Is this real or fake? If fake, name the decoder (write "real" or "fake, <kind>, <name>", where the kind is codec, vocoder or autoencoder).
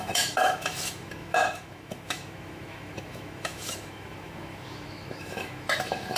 fake, autoencoder, DAC-VAE